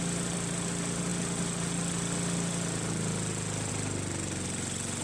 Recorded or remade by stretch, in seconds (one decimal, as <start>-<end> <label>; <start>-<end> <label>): 0.0-5.0 recorded